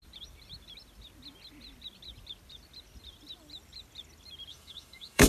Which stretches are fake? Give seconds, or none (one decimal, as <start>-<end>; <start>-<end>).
4.5-5.3